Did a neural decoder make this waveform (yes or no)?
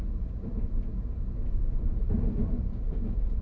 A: no